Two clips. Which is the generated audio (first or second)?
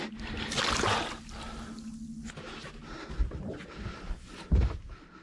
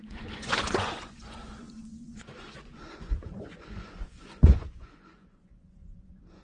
second